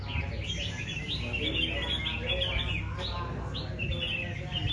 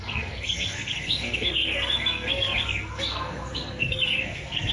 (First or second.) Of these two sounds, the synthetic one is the second